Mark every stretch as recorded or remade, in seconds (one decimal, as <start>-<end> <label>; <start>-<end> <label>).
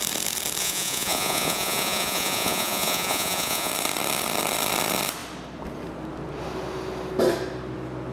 0.0-0.6 recorded; 0.6-3.7 remade; 3.7-8.1 recorded